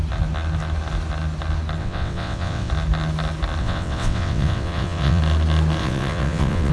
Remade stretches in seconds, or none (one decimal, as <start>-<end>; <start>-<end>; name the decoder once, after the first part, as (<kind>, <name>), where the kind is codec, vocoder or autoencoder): 1.8-2.7 (vocoder, WaveNeXt); 3.6-5.2; 5.8-6.7